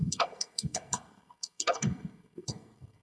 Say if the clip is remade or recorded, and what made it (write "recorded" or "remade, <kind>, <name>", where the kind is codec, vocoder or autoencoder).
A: remade, codec, SNAC